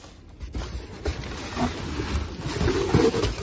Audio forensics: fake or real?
real